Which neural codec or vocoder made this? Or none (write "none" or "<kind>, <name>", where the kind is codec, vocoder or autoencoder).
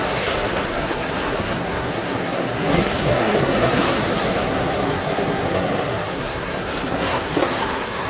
codec, SNAC